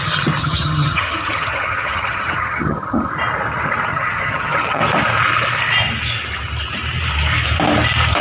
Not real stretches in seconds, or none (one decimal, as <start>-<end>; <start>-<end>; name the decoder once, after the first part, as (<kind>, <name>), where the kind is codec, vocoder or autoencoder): 0.4-3.1 (vocoder, HiFi-GAN); 3.9-4.8